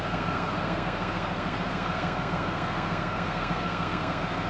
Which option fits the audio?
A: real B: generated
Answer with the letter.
B